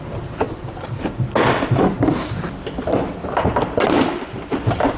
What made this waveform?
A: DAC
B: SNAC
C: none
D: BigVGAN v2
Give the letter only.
D